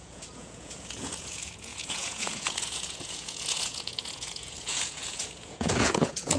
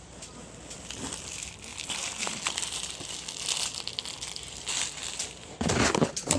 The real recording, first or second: second